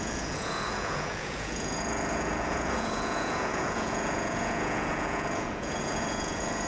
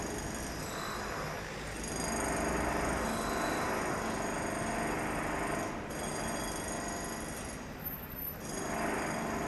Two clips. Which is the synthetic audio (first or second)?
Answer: first